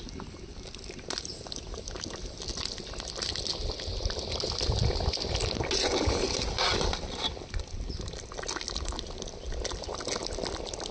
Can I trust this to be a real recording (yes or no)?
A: yes